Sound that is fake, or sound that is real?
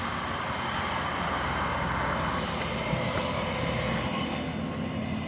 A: real